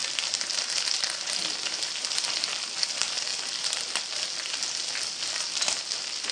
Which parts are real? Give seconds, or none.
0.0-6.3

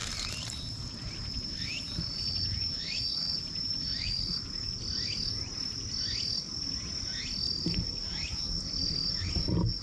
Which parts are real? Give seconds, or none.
4.4-9.8

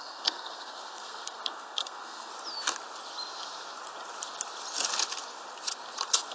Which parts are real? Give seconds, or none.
2.3-6.3

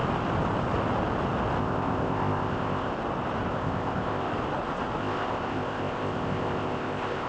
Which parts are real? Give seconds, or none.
0.0-1.6; 2.9-3.5; 4.3-5.0

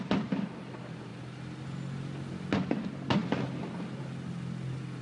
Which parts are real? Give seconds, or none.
0.0-5.0

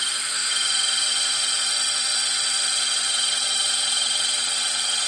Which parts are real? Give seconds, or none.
0.0-5.1